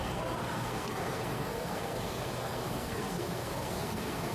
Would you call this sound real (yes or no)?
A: no